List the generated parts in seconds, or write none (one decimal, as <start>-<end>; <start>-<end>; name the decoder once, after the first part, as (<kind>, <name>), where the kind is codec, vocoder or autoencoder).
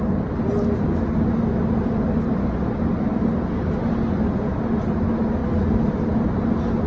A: none